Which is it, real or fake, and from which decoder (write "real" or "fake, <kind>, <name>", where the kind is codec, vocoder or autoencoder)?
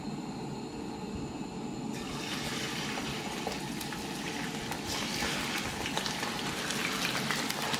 real